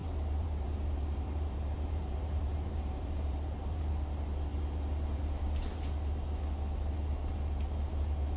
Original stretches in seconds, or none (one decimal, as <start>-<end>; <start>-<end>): 3.9-8.4